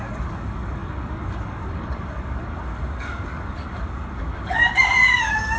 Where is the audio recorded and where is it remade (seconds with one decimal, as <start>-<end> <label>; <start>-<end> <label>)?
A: 0.0-5.6 remade